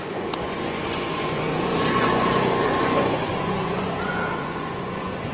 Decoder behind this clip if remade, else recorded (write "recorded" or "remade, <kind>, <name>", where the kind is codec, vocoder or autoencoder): remade, vocoder, Vocos